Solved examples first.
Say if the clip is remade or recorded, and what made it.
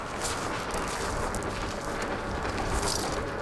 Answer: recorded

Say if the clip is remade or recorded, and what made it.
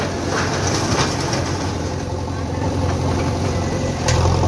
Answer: remade, vocoder, BigVGAN v2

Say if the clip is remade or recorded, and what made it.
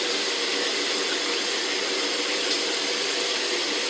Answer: remade, vocoder, BigVGAN v2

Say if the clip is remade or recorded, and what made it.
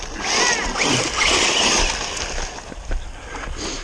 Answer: recorded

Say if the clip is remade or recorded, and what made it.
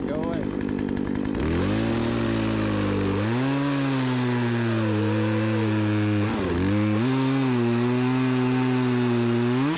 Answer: recorded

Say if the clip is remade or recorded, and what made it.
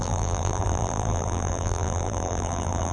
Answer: remade, vocoder, BigVGAN v2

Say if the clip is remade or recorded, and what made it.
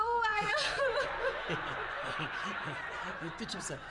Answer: remade, vocoder, Vocos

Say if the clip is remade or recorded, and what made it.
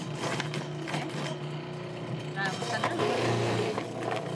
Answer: recorded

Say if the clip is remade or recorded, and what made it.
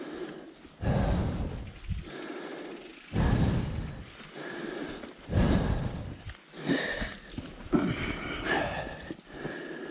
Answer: recorded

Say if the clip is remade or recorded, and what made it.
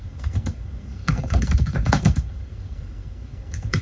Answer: remade, codec, SNAC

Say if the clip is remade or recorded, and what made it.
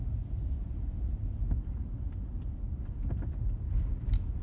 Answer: recorded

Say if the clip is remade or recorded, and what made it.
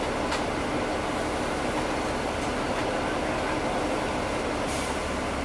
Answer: recorded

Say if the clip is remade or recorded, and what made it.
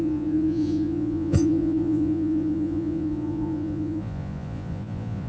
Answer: remade, vocoder, Vocos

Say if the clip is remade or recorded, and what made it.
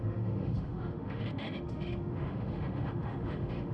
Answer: remade, autoencoder, DAC-VAE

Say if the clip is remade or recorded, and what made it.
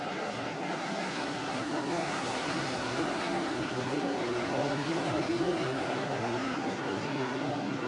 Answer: remade, codec, SNAC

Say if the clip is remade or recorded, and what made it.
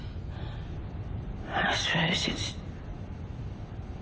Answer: recorded